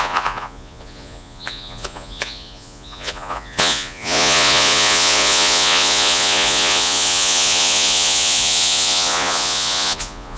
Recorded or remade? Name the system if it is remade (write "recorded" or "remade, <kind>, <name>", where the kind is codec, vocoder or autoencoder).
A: remade, vocoder, Vocos